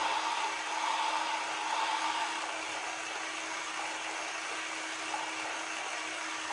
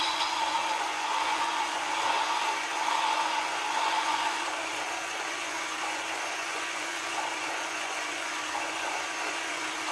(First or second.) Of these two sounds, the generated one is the second